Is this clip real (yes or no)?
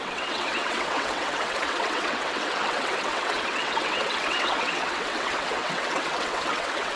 no